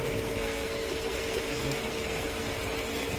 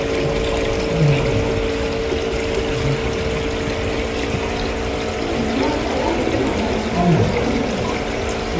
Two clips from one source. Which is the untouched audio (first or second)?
second